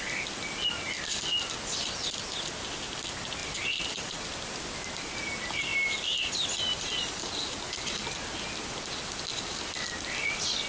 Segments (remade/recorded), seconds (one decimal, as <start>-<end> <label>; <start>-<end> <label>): 0.0-10.7 recorded

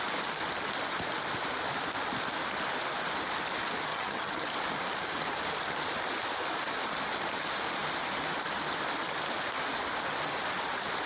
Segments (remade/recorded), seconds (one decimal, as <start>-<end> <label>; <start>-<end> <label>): 0.0-3.9 recorded; 3.9-4.5 remade; 4.5-11.1 recorded

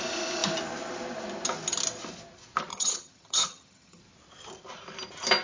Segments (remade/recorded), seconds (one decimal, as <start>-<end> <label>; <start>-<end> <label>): 0.0-2.7 recorded; 2.7-4.0 remade; 4.0-5.4 recorded

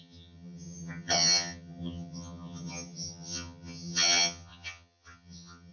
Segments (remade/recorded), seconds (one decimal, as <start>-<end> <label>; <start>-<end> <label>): 0.0-5.7 remade

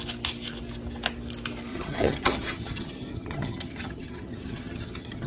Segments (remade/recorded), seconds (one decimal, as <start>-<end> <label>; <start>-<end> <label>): 0.0-1.7 recorded; 1.7-5.3 remade